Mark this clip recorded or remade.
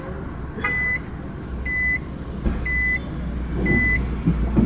recorded